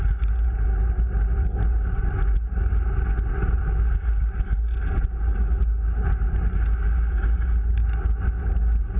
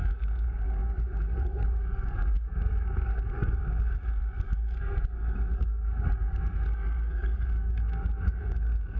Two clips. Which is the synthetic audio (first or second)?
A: second